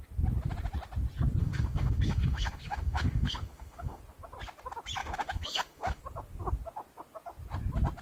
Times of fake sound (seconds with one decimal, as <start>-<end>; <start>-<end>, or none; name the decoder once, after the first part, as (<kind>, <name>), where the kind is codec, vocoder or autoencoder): 1.4-4.0 (autoencoder, DAC-VAE); 5.0-6.0